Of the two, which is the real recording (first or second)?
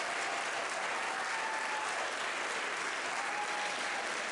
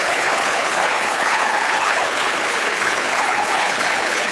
first